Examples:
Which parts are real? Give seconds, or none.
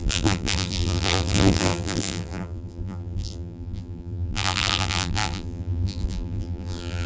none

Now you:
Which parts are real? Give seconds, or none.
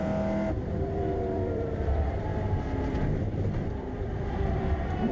0.0-0.5; 2.3-3.3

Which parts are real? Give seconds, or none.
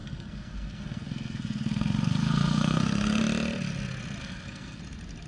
3.2-4.2; 4.8-5.3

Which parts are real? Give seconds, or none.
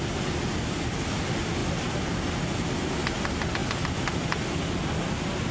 0.0-5.5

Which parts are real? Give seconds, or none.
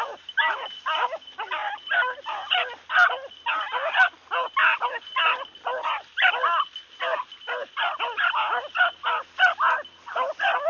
0.0-10.7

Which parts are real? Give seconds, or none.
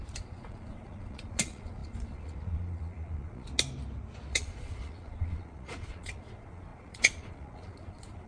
3.5-4.3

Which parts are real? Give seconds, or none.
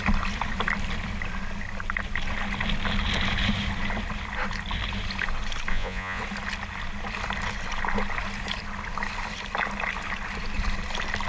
0.0-5.7; 6.2-11.3